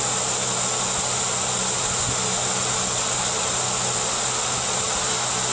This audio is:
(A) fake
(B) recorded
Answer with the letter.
B